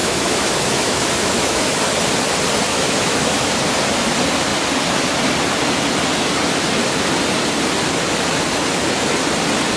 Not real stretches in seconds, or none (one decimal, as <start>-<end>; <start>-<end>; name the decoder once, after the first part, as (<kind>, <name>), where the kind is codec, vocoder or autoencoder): 0.0-1.8 (autoencoder, DAC-VAE); 2.7-3.5